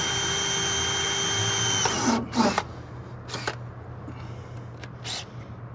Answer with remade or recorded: recorded